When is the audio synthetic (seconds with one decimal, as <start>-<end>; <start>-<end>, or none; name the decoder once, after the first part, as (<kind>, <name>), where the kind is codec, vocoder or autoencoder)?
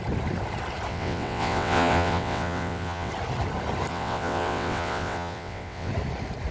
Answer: 0.9-3.1 (vocoder, WaveNeXt); 3.9-5.9